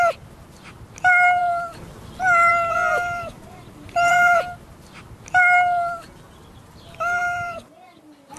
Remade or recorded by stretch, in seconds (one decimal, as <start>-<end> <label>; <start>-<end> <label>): 0.0-2.9 recorded; 2.9-4.1 remade; 4.1-7.2 recorded; 7.2-8.0 remade; 8.0-8.4 recorded